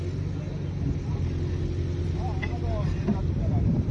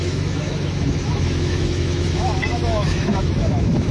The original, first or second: first